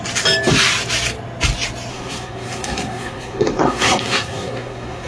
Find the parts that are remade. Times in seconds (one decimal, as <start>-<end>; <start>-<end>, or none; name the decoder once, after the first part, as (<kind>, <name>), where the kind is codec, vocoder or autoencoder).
1.9-5.1 (codec, SNAC)